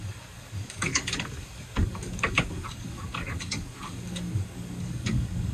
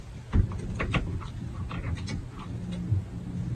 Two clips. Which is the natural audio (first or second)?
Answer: second